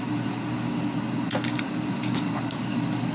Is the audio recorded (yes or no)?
yes